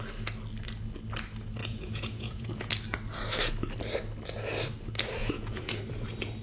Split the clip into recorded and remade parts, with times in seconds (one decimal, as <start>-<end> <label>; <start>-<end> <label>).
0.0-1.6 recorded; 1.6-2.7 remade; 2.7-5.2 recorded; 5.2-5.8 remade; 5.8-6.4 recorded